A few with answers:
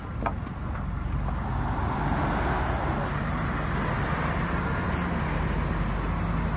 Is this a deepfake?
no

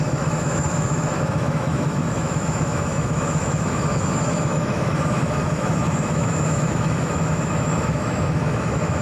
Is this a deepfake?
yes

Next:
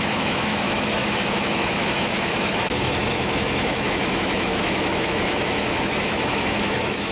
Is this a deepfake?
yes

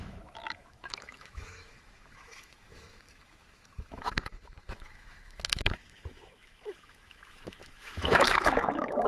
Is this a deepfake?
yes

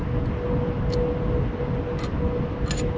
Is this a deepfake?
no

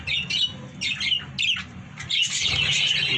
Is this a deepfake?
no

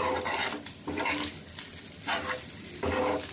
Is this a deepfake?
no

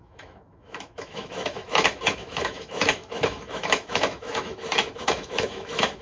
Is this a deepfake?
yes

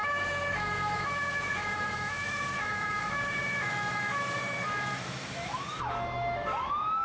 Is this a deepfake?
yes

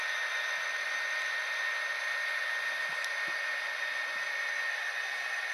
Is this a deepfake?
no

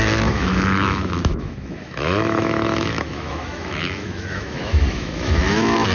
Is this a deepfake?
yes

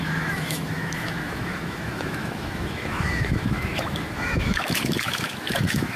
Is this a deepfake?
yes